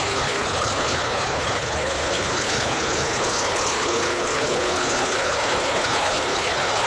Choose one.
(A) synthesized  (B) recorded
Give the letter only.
A